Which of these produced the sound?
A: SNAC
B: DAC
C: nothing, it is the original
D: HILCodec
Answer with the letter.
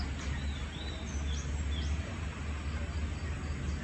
C